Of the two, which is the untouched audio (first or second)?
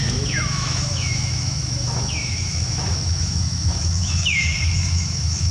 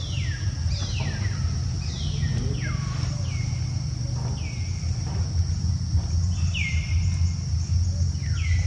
second